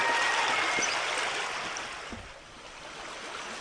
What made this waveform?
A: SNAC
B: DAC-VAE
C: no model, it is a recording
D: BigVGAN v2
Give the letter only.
C